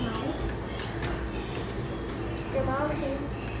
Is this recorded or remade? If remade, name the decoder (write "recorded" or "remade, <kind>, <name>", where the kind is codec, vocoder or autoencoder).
recorded